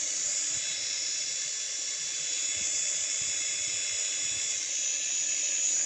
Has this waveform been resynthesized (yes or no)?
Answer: no